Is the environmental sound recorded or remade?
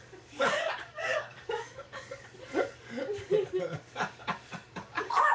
remade